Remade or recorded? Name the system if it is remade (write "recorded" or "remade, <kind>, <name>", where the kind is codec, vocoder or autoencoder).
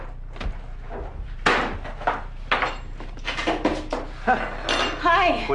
recorded